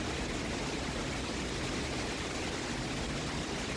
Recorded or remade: recorded